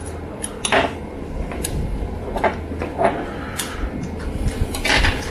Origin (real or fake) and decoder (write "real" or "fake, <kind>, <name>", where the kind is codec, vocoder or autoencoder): real